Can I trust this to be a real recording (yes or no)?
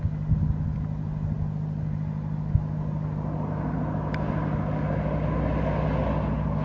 yes